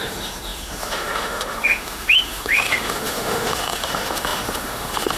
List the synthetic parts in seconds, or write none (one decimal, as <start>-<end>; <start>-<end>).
0.0-5.2